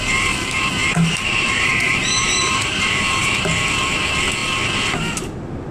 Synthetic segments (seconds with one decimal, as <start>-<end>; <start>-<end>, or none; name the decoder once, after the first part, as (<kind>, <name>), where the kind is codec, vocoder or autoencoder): 0.8-3.4 (vocoder, BigVGAN v2)